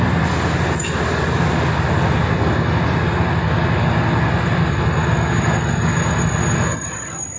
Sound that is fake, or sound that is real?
real